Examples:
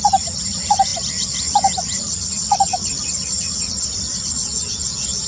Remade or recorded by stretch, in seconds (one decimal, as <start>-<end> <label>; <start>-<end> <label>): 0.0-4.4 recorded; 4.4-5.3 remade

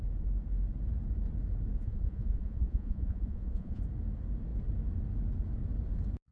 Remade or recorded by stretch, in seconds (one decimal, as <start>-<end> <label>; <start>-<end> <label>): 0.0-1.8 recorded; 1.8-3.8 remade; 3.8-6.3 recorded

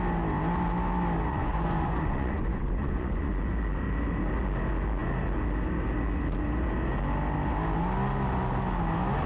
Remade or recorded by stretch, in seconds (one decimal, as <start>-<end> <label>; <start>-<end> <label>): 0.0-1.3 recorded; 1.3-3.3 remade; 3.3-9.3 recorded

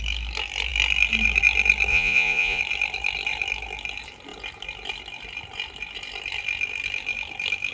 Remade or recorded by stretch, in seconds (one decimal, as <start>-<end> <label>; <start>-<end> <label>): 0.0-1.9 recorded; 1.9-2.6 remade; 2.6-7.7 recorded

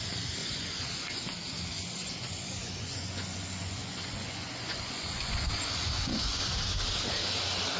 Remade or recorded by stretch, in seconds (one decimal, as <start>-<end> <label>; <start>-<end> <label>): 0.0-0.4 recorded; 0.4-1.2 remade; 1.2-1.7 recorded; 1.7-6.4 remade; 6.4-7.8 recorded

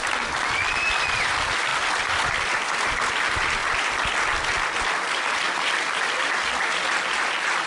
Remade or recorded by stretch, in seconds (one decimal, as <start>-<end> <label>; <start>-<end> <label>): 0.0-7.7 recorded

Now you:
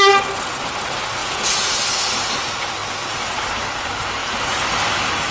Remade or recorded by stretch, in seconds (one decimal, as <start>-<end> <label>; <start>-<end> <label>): 0.0-1.2 recorded; 1.2-1.7 remade; 1.7-5.3 recorded

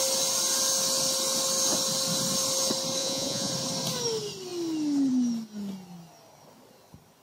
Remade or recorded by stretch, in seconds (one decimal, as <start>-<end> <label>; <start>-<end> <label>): 0.0-3.0 recorded; 3.0-3.5 remade; 3.5-7.2 recorded